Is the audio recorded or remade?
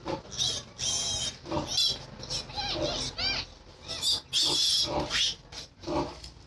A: recorded